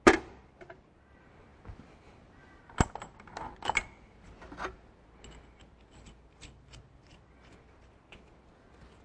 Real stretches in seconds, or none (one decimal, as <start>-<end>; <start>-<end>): 0.0-9.0